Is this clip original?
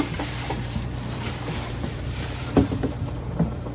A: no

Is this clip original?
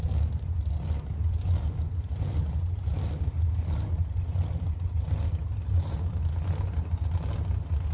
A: yes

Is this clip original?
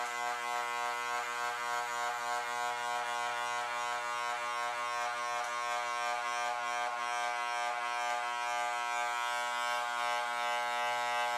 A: yes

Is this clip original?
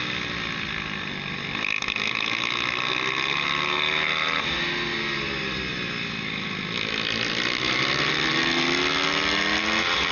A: yes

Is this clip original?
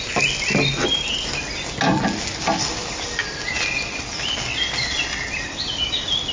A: yes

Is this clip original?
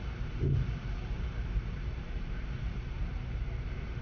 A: no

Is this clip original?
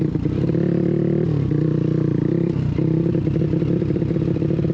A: no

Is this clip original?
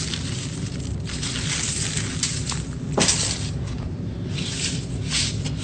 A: yes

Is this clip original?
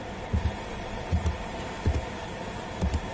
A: no